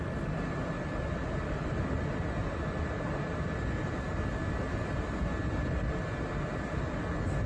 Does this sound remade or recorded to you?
recorded